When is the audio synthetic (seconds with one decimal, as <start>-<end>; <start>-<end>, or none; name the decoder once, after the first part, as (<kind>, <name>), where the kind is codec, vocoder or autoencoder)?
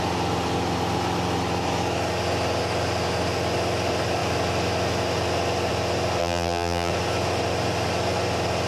6.2-6.9 (vocoder, BigVGAN v2)